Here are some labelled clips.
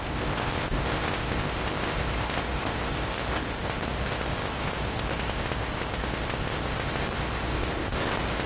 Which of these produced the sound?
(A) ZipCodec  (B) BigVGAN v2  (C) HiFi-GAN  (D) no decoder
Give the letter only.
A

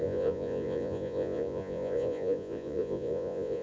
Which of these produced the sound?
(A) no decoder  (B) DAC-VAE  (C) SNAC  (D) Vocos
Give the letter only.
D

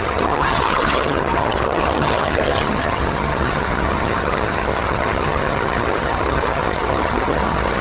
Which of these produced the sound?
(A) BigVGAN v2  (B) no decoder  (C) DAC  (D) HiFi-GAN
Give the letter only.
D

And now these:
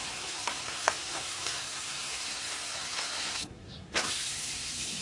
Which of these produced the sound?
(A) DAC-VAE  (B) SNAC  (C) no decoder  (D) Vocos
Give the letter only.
B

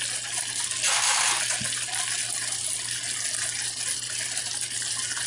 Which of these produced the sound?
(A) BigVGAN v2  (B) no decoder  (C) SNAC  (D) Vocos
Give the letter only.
B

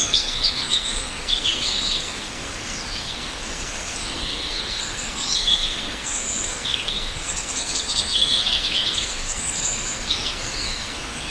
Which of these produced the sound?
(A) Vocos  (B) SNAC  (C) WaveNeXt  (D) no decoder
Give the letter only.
B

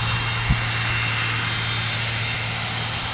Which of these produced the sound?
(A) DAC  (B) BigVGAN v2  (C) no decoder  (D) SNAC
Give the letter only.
C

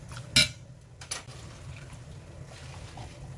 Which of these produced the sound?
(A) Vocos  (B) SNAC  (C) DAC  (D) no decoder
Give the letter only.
D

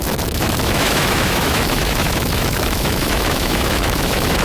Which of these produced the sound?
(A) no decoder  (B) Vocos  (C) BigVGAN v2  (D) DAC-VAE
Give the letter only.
D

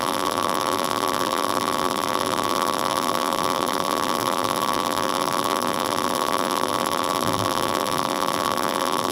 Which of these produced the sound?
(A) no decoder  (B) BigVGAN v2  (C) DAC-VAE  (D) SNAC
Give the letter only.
B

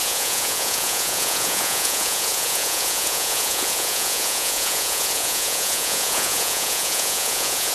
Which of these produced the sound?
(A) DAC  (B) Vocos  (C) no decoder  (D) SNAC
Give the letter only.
B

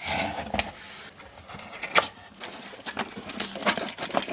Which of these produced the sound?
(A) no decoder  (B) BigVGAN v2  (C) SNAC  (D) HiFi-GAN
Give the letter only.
A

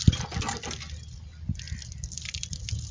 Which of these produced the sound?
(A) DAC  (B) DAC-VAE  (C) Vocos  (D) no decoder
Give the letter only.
D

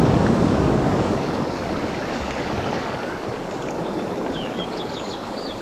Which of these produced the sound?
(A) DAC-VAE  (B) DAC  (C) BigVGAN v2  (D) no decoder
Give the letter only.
B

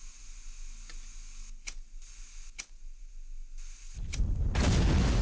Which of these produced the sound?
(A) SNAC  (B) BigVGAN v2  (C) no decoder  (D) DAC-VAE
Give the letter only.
C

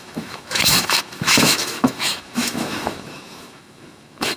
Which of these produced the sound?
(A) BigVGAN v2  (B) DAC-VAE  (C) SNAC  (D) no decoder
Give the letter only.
B